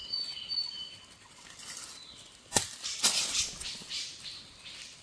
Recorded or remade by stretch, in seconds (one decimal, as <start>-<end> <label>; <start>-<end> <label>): 0.0-5.0 recorded